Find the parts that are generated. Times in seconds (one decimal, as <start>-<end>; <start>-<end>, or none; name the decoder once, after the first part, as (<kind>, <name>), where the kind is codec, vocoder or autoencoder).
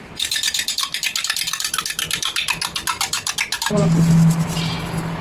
none